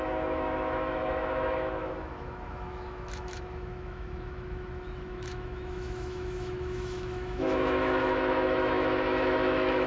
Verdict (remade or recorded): remade